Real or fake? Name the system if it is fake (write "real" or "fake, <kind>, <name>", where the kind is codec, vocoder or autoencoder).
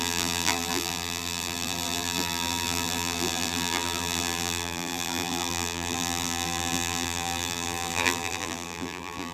fake, vocoder, BigVGAN v2